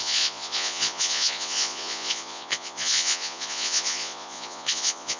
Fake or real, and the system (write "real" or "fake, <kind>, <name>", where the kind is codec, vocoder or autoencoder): fake, vocoder, Vocos